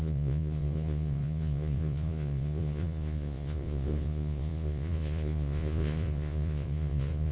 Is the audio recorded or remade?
remade